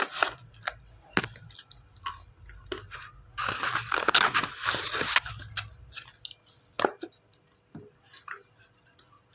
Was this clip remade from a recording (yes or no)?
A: no